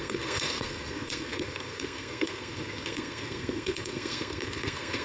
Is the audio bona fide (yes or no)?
no